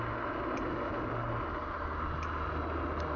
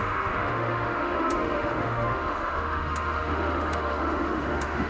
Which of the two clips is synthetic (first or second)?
second